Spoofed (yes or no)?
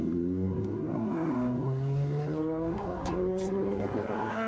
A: yes